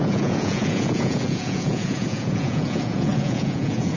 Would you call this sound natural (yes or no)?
no